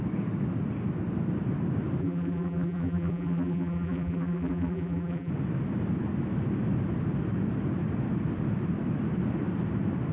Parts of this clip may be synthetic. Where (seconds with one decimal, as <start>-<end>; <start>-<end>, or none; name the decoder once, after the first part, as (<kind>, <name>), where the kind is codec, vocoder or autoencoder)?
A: 2.0-5.3 (vocoder, BigVGAN v2)